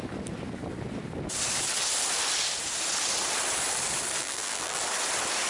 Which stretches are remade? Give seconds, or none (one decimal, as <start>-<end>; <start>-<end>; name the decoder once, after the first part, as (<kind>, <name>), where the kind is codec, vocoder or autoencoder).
4.2-4.8 (vocoder, BigVGAN v2)